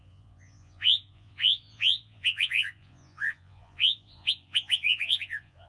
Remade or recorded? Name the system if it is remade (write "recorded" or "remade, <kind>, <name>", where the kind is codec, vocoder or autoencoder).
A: remade, vocoder, Vocos